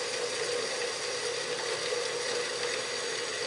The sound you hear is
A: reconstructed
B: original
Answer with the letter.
B